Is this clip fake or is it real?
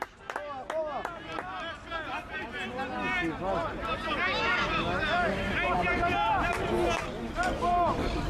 real